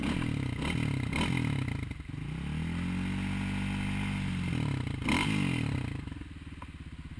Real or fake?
real